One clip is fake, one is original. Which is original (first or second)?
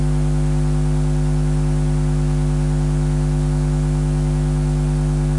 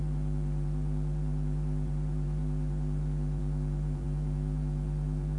first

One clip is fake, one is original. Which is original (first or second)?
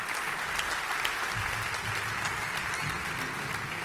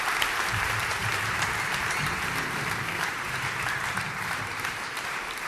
first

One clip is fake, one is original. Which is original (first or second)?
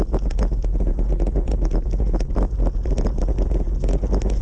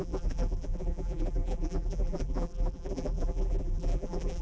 first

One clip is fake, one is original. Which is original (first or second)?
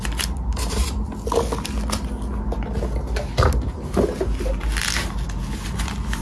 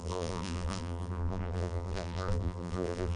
first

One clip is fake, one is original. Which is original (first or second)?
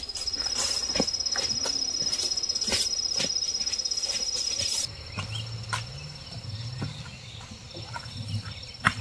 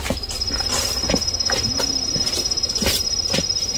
first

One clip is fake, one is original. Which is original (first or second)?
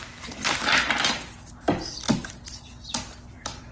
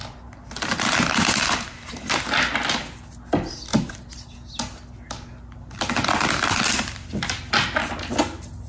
second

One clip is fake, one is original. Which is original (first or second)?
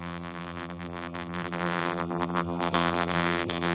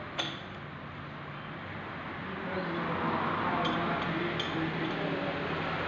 second